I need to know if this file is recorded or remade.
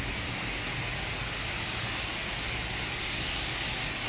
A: recorded